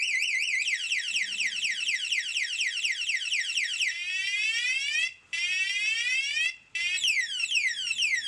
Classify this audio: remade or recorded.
remade